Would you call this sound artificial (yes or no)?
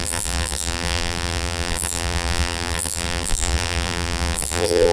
yes